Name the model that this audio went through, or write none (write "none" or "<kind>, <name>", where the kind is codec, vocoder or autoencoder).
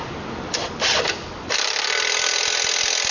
none